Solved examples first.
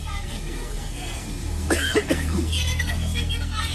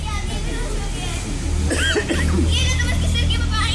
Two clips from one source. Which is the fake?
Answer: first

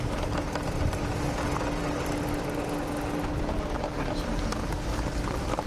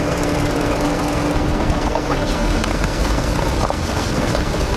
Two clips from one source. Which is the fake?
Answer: second